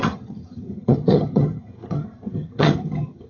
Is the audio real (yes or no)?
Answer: no